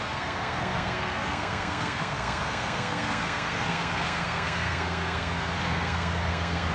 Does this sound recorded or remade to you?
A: remade